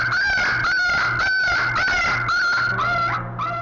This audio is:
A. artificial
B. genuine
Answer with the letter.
B